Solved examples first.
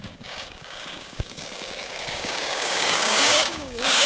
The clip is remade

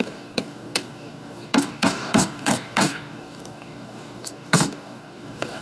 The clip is remade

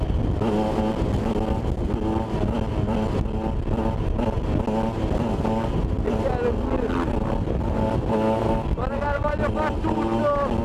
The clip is recorded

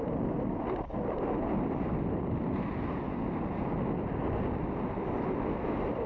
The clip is recorded